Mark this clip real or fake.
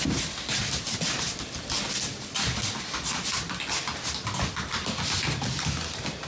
real